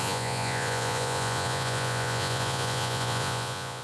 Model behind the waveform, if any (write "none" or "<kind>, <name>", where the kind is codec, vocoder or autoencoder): vocoder, Vocos